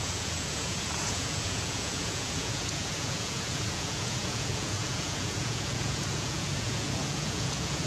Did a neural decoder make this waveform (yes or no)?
yes